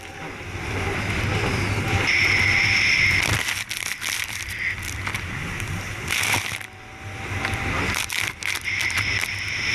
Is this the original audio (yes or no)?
yes